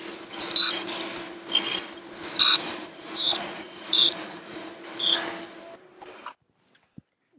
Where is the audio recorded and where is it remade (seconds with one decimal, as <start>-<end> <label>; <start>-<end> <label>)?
0.0-2.5 recorded; 2.5-4.7 remade; 4.7-7.4 recorded